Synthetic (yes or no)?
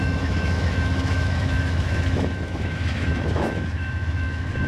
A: yes